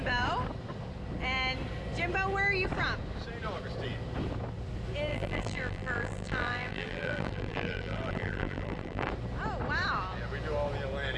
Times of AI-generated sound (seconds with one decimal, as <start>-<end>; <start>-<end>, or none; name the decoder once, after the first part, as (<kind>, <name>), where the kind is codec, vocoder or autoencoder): 5.1-9.1 (vocoder, BigVGAN v2)